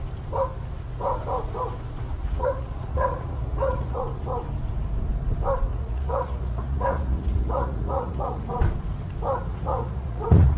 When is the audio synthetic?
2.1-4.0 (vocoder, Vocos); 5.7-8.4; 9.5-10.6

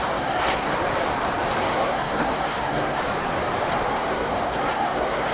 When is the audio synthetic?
0.0-0.7 (codec, SNAC); 1.6-3.0; 3.9-5.3